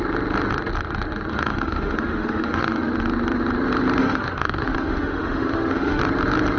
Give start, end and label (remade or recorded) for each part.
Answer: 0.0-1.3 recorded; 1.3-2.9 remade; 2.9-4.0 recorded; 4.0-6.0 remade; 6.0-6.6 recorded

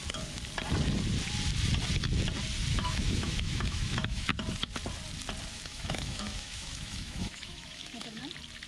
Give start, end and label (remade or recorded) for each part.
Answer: 0.0-2.7 recorded; 2.7-4.3 remade; 4.3-5.5 recorded; 5.5-8.2 remade; 8.2-8.7 recorded

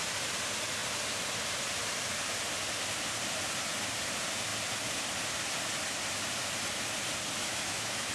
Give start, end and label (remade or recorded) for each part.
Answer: 0.0-7.4 recorded; 7.4-8.1 remade

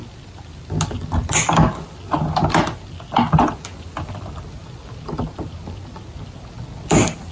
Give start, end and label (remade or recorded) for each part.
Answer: 0.0-7.3 recorded

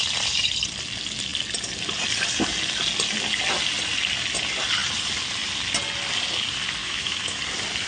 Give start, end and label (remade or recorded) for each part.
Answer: 0.0-6.8 recorded; 6.8-7.4 remade; 7.4-7.9 recorded

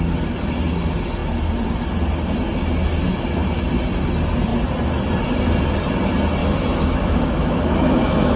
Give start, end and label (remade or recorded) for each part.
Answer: 0.0-6.4 recorded; 6.4-8.4 remade

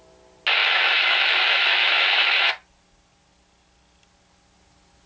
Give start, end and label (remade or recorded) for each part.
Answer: 0.0-0.6 recorded; 0.6-2.5 remade; 2.5-5.1 recorded